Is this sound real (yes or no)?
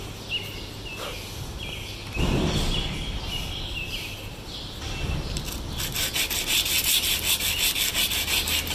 yes